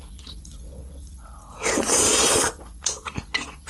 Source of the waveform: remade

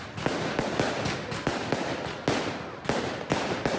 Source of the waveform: recorded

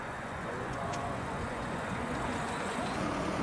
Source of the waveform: remade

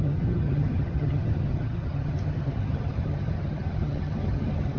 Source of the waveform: remade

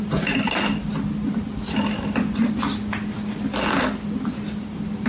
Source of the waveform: recorded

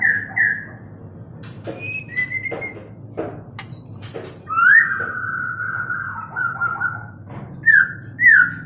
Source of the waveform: recorded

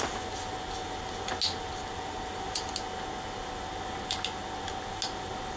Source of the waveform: recorded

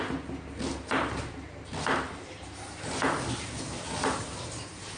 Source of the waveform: recorded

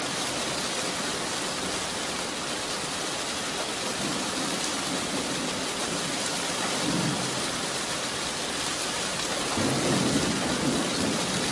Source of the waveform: recorded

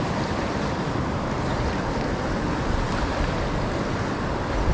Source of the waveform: recorded